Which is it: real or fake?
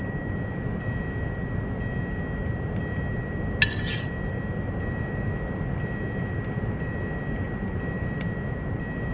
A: real